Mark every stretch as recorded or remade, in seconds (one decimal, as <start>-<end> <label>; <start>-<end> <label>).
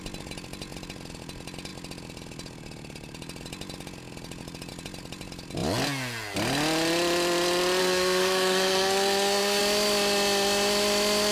0.0-7.8 recorded; 7.8-9.6 remade; 9.6-11.3 recorded